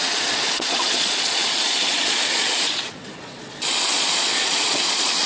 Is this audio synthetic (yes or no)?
yes